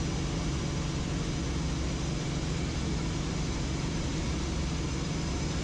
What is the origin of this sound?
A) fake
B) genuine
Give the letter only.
B